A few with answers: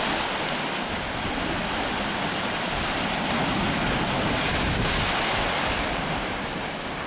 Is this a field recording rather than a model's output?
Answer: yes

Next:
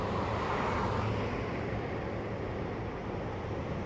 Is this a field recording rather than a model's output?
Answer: yes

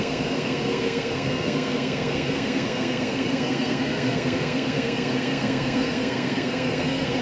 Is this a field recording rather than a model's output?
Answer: no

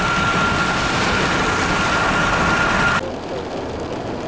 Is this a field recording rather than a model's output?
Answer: yes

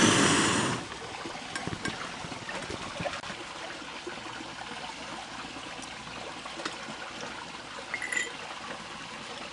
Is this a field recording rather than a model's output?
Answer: yes